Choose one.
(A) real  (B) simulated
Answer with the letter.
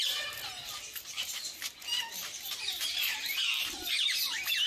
B